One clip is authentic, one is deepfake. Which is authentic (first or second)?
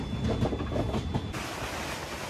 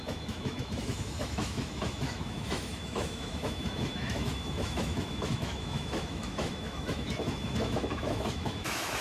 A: first